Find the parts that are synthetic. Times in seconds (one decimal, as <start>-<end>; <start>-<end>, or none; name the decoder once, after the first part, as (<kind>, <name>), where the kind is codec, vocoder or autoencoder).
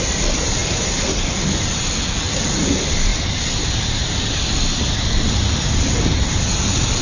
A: none